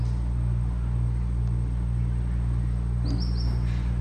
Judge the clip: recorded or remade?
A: recorded